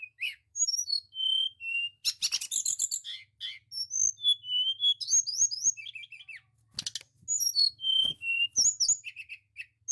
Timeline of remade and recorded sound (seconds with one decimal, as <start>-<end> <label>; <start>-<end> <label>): 0.0-2.0 remade; 2.0-7.6 recorded; 7.6-8.5 remade; 8.5-9.9 recorded